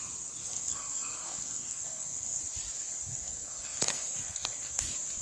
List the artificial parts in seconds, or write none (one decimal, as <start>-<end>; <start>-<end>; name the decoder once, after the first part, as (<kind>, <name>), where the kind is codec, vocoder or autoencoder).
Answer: 0.4-2.4 (codec, SNAC); 3.1-4.8